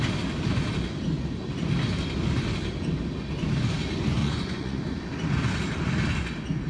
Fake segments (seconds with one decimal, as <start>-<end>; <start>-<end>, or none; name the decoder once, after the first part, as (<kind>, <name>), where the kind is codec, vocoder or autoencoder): 4.2-4.8 (vocoder, Vocos)